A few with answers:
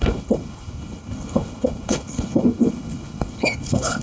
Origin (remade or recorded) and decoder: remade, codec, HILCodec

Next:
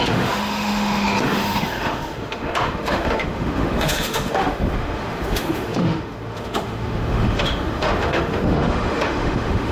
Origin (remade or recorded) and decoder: remade, autoencoder, DAC-VAE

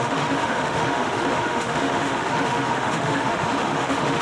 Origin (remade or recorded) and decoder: remade, autoencoder, DAC-VAE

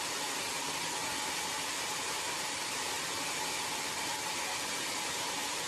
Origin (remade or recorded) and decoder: recorded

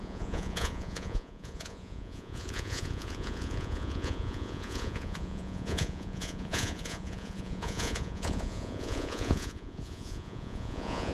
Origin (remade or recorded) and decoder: remade, vocoder, Vocos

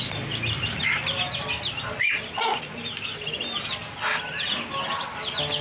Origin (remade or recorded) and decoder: recorded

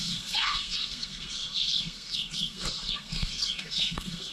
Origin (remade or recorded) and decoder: remade, codec, SNAC